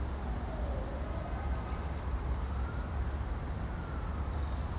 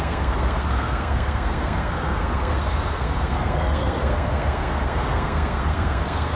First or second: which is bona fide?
first